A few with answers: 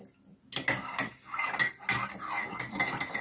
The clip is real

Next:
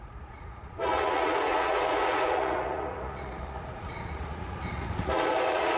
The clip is fake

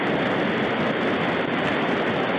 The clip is real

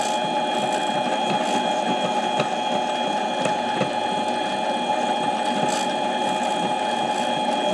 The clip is real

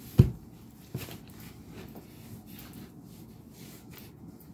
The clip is real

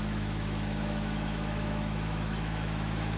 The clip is fake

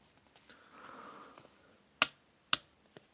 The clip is real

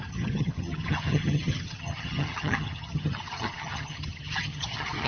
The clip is fake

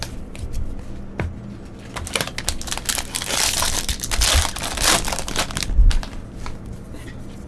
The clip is real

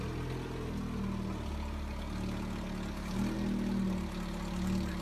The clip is real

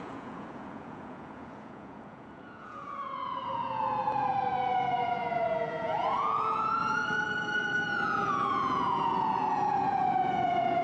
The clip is fake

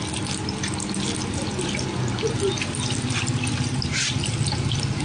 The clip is real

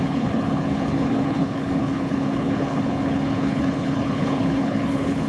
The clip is fake